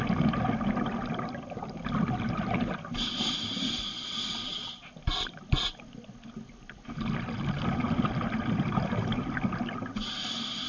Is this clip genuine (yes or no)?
yes